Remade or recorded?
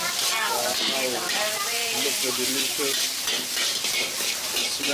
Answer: remade